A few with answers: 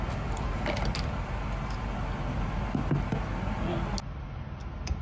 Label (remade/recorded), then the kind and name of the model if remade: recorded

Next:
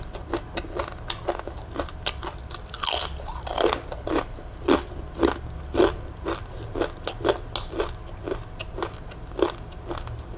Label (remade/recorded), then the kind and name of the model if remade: recorded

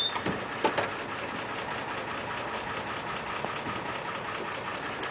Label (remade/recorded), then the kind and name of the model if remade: recorded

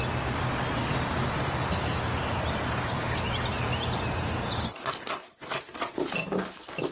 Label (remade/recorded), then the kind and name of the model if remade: recorded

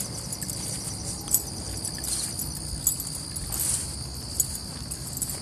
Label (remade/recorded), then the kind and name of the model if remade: recorded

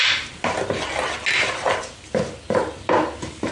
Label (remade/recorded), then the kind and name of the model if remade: recorded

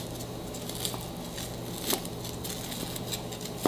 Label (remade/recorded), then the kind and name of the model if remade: recorded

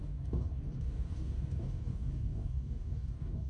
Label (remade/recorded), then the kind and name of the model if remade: remade, codec, DAC